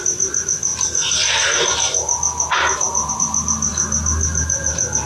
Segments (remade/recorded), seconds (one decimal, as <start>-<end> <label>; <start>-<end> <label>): 0.0-0.7 remade; 0.7-3.1 recorded; 3.1-3.7 remade; 3.7-5.1 recorded

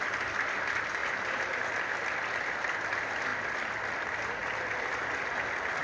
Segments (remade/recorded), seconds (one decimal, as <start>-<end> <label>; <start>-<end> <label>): 0.0-1.0 recorded; 1.0-1.6 remade; 1.6-5.8 recorded

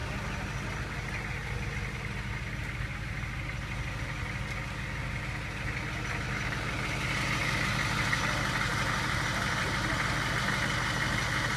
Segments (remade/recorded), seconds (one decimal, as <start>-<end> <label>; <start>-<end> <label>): 0.0-8.7 recorded; 8.7-9.9 remade; 9.9-11.6 recorded

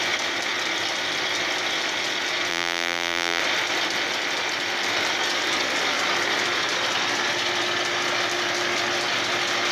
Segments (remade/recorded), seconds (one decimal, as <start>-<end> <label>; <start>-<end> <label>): 0.0-2.5 recorded; 2.5-3.4 remade; 3.4-9.7 recorded

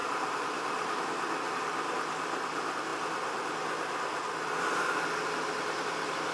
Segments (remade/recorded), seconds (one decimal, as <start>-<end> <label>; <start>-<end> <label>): 0.0-1.0 remade; 1.0-6.3 recorded

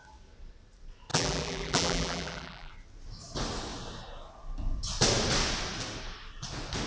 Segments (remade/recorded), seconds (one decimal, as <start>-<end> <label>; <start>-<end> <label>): 0.0-1.1 recorded; 1.1-2.7 remade; 2.7-6.9 recorded

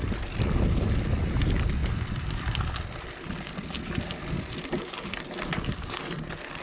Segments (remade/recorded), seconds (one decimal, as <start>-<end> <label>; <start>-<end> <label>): 0.0-1.8 recorded; 1.8-3.9 remade; 3.9-6.6 recorded